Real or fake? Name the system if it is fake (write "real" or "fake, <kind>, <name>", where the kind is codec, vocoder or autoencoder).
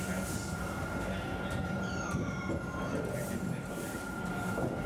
real